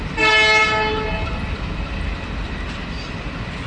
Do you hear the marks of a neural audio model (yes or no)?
no